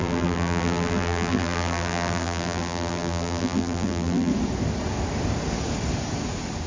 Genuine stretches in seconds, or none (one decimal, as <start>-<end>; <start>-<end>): 4.3-6.7